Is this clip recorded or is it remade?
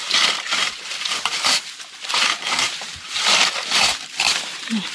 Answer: remade